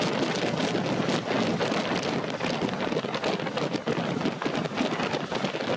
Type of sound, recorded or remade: recorded